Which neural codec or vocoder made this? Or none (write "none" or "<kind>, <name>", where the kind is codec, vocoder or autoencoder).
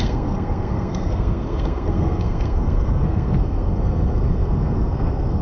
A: codec, SNAC